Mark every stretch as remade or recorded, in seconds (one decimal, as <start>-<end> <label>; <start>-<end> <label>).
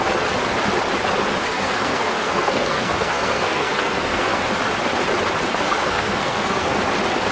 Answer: 0.0-1.4 recorded; 1.4-4.4 remade; 4.4-5.5 recorded; 5.5-6.8 remade; 6.8-7.3 recorded